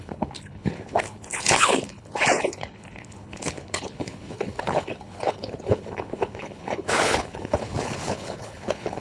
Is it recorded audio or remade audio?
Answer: remade